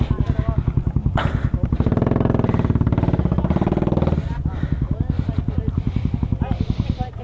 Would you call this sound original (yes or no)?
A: yes